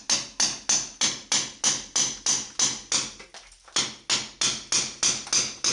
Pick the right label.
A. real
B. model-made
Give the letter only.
A